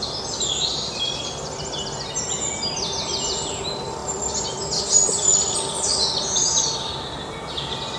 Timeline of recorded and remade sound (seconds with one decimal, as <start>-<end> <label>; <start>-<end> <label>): 0.0-8.0 recorded